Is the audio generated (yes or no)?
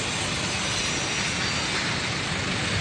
no